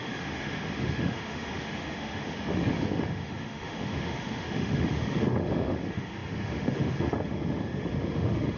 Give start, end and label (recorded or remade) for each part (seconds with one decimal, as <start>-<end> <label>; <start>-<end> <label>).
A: 0.0-8.6 remade